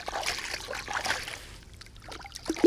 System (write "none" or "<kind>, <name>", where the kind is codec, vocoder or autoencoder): none